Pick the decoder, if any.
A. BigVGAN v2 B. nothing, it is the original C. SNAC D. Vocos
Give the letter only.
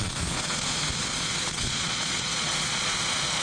D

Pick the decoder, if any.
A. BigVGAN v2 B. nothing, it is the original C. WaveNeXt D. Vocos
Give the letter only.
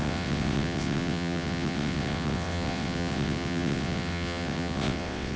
C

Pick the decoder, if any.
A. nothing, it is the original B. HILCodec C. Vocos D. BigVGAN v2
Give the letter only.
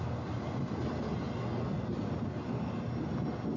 A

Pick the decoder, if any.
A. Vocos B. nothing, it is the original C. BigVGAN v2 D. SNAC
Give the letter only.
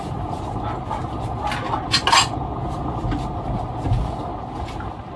B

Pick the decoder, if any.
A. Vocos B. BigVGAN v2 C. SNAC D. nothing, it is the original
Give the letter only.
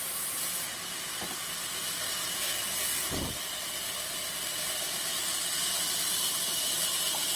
D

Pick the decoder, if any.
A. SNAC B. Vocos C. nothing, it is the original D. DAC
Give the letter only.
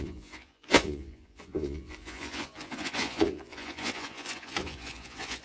B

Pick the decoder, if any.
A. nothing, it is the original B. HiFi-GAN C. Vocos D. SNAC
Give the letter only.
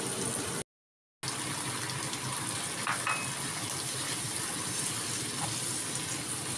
A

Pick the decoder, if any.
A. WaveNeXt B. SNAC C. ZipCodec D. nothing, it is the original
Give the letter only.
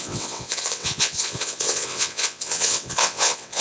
A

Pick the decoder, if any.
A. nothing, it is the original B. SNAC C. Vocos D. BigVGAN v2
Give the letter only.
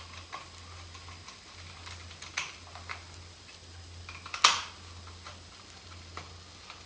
A